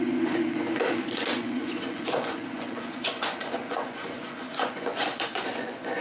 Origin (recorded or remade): remade